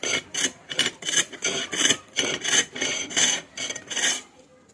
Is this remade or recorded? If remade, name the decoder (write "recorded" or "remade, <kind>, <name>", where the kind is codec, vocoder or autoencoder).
remade, vocoder, BigVGAN v2